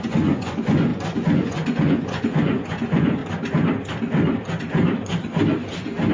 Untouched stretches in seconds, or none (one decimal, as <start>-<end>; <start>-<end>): 3.2-6.1